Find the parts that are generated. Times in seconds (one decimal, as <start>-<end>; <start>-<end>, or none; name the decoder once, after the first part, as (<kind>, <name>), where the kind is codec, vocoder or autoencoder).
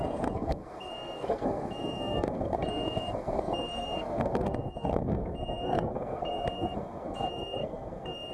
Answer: 0.0-8.3 (codec, SNAC)